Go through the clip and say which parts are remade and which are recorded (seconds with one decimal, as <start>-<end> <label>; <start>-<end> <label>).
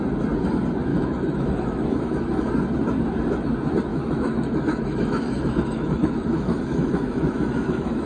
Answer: 0.0-0.9 recorded; 0.9-2.5 remade; 2.5-3.9 recorded; 3.9-8.1 remade